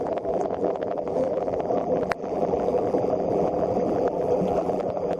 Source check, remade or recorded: remade